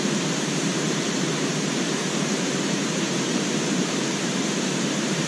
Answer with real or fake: fake